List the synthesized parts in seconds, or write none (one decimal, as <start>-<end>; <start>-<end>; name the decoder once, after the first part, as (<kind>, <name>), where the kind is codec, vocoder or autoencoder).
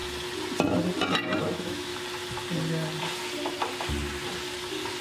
1.4-1.9 (autoencoder, DAC-VAE)